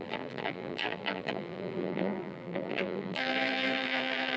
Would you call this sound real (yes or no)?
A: no